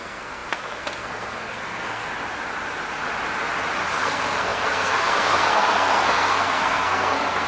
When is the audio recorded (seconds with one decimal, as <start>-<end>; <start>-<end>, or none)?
2.1-4.0